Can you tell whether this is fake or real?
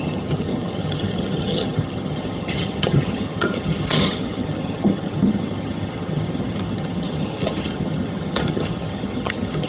fake